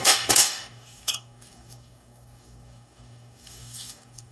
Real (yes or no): no